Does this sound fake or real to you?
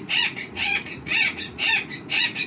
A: fake